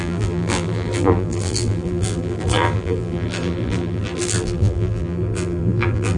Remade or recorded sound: remade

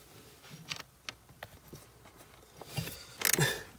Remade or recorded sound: recorded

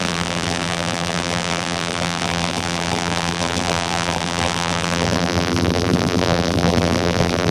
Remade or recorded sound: remade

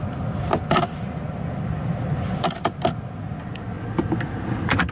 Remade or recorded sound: remade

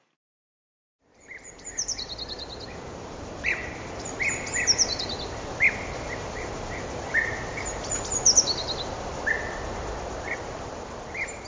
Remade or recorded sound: remade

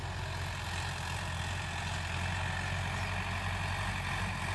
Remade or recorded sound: recorded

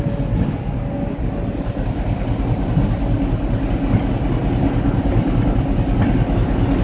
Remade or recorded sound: recorded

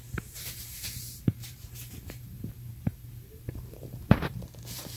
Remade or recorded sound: remade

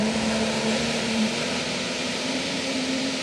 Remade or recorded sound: remade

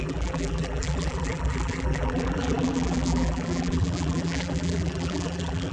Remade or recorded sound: remade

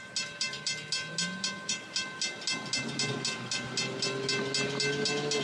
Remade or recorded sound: recorded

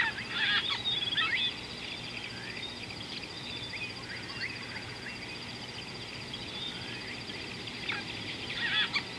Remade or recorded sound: recorded